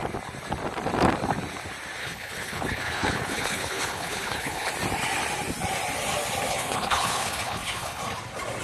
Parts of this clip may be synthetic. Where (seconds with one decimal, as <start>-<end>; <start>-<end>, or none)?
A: 2.0-4.7; 6.5-8.0